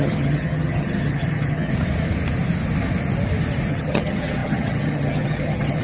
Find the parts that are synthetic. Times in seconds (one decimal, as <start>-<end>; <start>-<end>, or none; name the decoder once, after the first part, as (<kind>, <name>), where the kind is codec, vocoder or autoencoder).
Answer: 0.0-1.7 (vocoder, HiFi-GAN); 3.7-5.8